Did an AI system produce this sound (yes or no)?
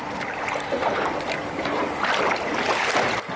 no